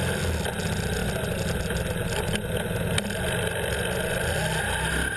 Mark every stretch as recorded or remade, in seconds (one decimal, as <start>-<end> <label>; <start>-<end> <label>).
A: 0.0-5.2 recorded